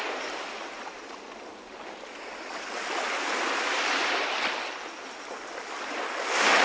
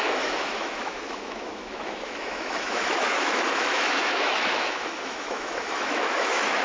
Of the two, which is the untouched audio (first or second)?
first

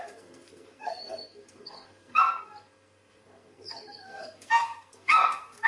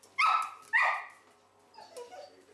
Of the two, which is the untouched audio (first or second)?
second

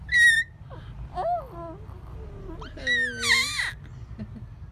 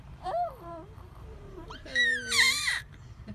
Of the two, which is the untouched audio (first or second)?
first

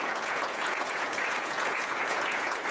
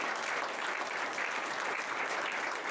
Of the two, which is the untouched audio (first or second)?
second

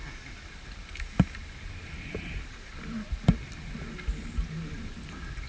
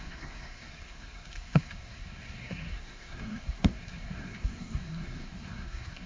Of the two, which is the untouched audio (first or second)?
first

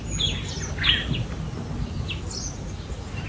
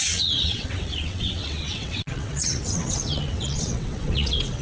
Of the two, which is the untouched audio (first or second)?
first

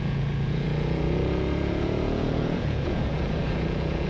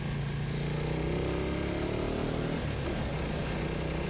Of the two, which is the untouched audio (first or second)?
second